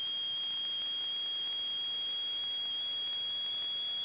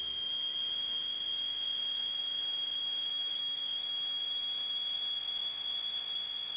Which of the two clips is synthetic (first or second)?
second